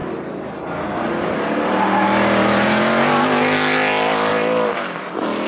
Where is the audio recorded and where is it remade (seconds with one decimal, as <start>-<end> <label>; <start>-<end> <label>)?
0.0-4.3 recorded; 4.3-5.5 remade